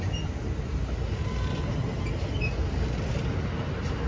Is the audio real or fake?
real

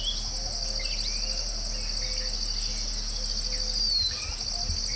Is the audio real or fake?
real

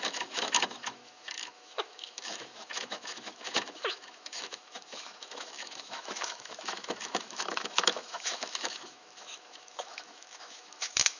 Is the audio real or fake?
fake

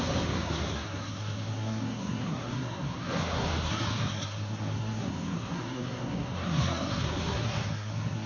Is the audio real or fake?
fake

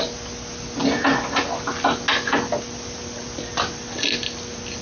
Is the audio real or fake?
real